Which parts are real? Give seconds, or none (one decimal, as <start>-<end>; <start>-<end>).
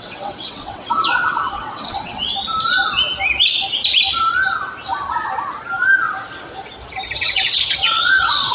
2.3-7.2